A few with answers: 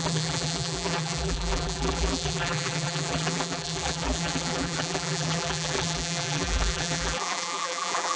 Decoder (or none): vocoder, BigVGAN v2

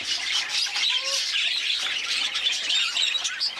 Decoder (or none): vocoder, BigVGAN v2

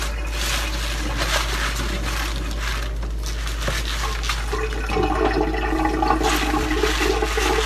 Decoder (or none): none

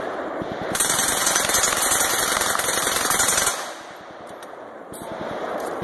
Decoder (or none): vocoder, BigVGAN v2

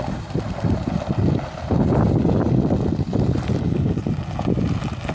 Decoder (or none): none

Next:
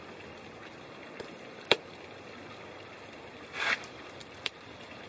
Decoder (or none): vocoder, BigVGAN v2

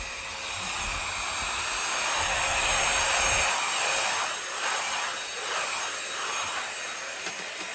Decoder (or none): none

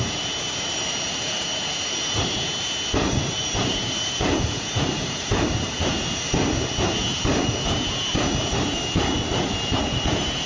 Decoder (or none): vocoder, BigVGAN v2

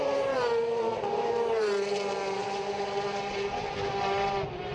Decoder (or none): vocoder, BigVGAN v2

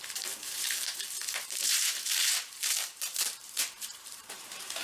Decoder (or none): vocoder, BigVGAN v2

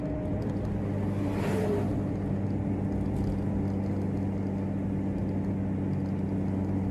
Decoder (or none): none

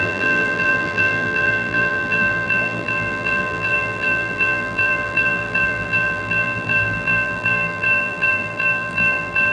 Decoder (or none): vocoder, BigVGAN v2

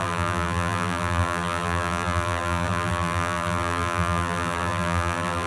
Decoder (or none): vocoder, BigVGAN v2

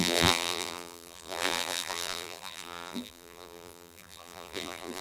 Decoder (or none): vocoder, BigVGAN v2